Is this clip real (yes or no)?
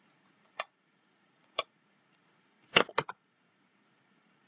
no